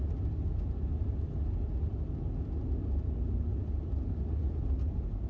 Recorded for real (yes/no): yes